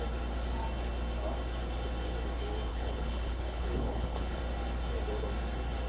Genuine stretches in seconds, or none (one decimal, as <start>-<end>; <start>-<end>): 0.0-2.7; 4.4-5.9